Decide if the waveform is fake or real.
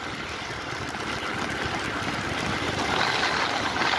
real